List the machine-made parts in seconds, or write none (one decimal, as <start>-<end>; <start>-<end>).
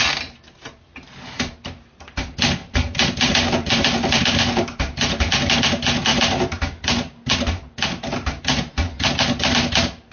2.6-5.3